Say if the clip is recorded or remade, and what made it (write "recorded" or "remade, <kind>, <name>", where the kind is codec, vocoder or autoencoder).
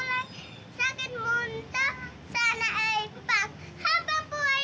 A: recorded